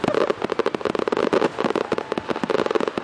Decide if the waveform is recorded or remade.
recorded